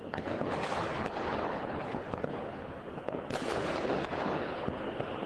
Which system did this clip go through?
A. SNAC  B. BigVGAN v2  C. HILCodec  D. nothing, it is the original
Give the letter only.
C